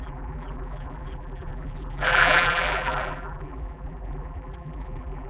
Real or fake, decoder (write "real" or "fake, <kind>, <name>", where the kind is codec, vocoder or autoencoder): fake, vocoder, BigVGAN v2